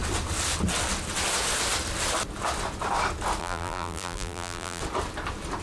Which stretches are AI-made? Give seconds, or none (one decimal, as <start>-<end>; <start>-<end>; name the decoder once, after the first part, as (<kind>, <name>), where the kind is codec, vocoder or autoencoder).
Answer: 3.4-4.8 (vocoder, BigVGAN v2)